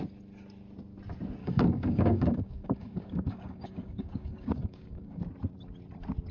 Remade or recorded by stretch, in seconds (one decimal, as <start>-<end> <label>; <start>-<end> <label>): 0.0-1.4 recorded; 1.4-5.2 remade; 5.2-6.3 recorded